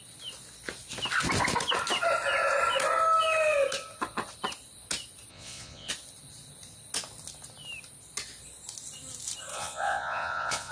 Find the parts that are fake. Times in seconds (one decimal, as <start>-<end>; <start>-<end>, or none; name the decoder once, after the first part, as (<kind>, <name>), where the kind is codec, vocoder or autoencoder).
5.3-5.9 (vocoder, Vocos); 9.5-10.7